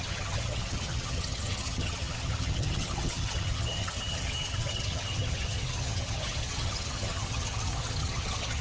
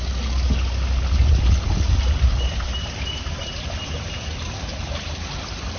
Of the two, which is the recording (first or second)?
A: second